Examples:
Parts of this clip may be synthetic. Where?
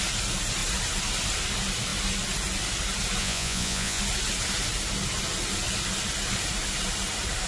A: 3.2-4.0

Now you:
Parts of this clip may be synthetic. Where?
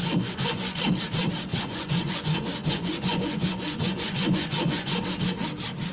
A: 0.0-0.8; 1.5-5.0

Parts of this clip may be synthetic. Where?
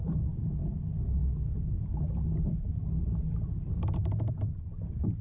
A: none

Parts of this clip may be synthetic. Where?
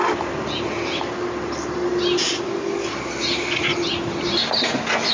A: none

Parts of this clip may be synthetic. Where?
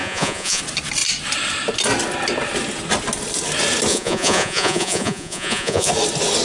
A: 0.0-0.6; 3.9-5.9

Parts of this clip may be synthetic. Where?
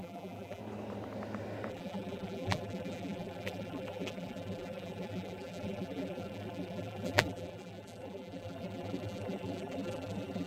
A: 0.0-0.6; 1.7-10.5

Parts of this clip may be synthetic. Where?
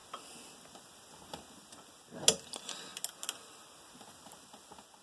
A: none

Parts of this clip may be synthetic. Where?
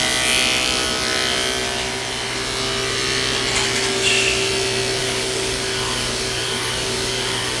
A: 5.0-7.6